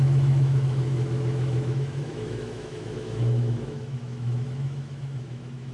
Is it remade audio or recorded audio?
remade